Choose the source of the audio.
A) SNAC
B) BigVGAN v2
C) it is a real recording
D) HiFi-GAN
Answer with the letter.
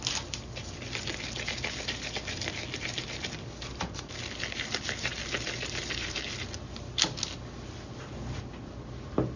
C